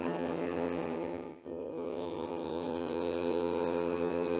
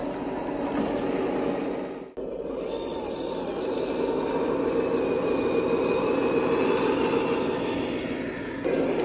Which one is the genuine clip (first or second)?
second